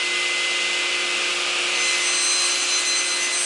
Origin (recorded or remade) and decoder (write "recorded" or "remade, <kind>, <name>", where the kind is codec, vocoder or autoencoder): recorded